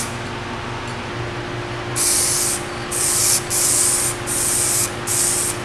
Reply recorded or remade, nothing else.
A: recorded